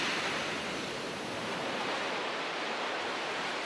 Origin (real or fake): fake